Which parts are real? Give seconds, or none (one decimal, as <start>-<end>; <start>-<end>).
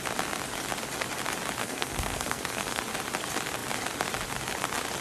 0.0-1.6; 2.8-5.0